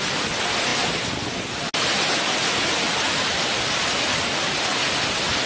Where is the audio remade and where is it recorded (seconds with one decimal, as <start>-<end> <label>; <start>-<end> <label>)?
0.0-5.5 recorded